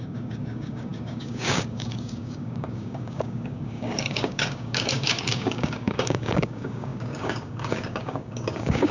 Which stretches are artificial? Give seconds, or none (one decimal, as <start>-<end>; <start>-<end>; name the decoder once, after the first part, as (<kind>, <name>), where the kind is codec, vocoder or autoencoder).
0.0-8.9 (codec, DAC)